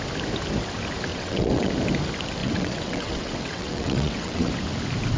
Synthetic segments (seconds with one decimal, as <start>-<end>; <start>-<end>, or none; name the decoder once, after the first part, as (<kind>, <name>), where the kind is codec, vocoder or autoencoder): 1.1-1.7 (vocoder, WaveNeXt); 2.4-4.5